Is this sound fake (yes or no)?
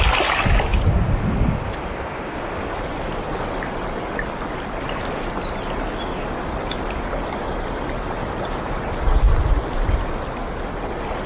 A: no